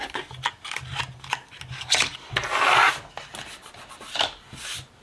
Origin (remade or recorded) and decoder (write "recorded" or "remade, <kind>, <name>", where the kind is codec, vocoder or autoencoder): recorded